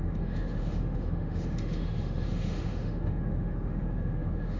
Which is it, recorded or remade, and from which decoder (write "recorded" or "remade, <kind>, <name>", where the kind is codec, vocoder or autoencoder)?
remade, autoencoder, DAC-VAE